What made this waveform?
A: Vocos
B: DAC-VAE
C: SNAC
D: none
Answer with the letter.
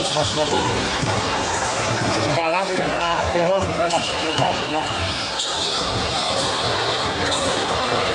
C